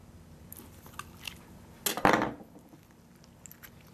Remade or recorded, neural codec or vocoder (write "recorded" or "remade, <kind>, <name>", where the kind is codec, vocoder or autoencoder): recorded